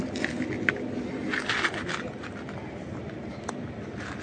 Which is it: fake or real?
real